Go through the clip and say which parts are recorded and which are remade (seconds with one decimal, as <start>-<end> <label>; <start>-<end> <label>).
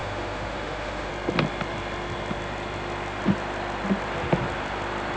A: 0.0-1.1 remade; 1.1-5.2 recorded